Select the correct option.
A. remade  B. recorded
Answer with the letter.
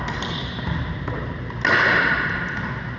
B